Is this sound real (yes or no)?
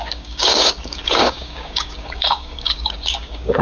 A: no